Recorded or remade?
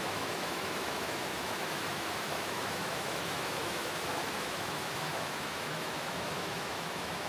remade